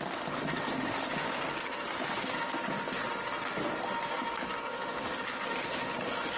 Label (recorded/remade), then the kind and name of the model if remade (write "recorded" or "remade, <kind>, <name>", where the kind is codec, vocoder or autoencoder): recorded